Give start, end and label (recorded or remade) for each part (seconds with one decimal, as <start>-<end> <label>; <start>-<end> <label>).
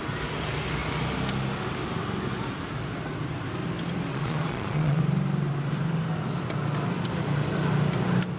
0.0-4.1 recorded; 4.1-5.0 remade; 5.0-8.4 recorded